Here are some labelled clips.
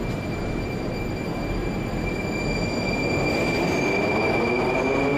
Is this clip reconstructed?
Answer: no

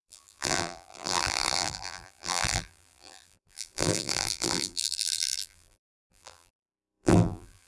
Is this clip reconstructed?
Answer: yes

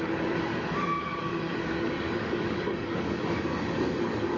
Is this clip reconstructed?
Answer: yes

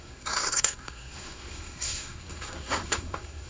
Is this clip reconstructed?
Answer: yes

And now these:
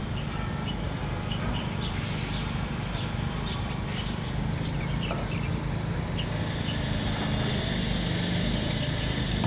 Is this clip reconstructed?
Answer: no